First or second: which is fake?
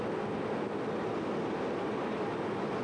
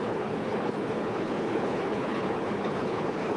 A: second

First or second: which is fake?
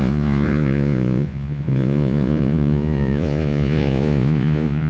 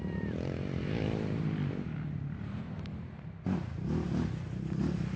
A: first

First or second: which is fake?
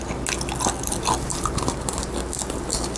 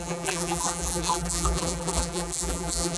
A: second